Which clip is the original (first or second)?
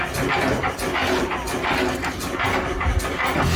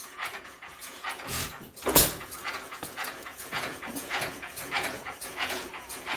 first